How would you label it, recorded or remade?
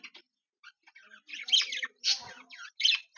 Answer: recorded